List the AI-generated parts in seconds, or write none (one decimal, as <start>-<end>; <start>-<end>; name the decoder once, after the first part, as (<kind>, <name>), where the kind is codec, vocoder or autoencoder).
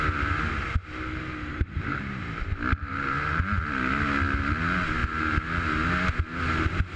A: 1.5-2.2 (vocoder, BigVGAN v2); 2.8-3.4